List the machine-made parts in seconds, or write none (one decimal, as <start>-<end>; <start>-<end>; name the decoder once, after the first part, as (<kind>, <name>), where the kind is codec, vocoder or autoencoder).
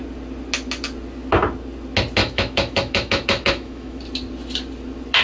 2.2-4.0 (autoencoder, DAC-VAE)